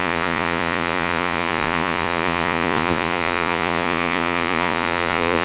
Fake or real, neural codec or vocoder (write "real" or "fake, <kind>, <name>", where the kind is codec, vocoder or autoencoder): fake, vocoder, Vocos